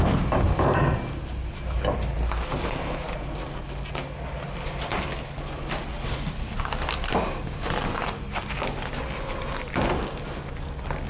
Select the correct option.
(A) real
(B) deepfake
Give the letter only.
A